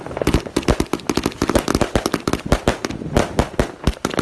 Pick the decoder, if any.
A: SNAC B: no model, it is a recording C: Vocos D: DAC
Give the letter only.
B